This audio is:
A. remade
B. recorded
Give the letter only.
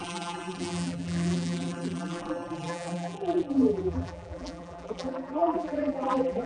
A